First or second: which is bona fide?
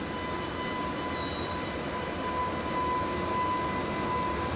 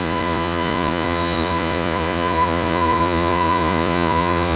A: first